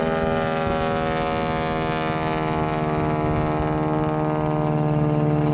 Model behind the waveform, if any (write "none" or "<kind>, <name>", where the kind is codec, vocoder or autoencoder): none